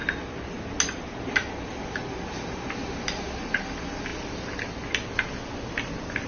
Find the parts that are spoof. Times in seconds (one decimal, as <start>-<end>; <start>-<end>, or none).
none